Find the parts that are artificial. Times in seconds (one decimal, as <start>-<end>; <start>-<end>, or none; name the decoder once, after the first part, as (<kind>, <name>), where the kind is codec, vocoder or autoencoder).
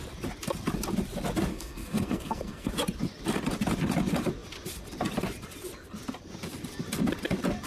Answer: 1.5-2.7 (codec, SNAC)